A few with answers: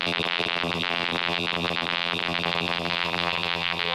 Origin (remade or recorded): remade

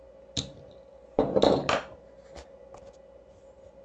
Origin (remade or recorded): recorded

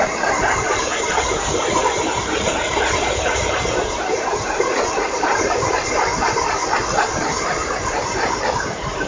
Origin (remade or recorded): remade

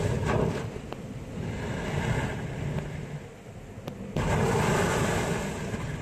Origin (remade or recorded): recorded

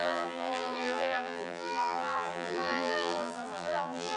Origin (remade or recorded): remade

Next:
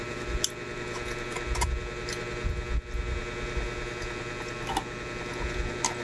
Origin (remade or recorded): recorded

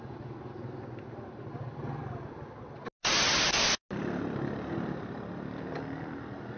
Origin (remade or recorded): recorded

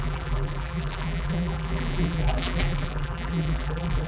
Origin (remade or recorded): remade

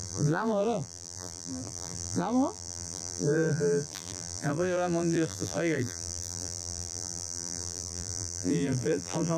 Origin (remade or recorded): remade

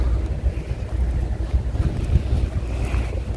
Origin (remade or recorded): recorded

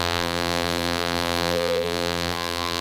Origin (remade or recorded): remade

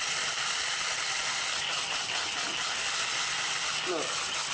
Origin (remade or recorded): recorded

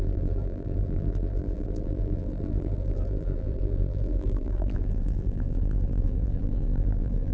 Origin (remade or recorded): remade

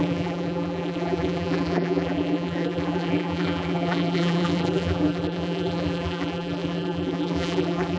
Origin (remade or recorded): remade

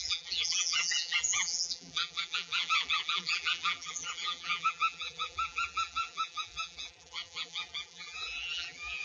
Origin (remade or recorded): remade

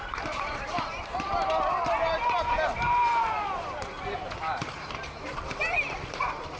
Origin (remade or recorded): remade